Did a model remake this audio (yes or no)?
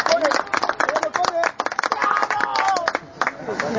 no